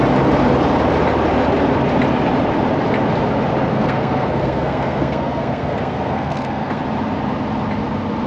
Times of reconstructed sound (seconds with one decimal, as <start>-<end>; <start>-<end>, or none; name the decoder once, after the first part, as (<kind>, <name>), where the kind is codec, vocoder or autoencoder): 3.7-6.8 (codec, SNAC)